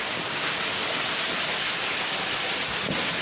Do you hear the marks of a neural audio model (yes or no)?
no